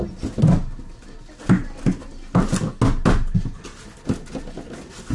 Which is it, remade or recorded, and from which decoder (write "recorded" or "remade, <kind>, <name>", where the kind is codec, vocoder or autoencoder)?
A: recorded